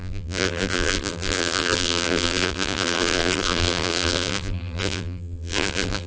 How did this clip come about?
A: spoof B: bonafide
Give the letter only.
A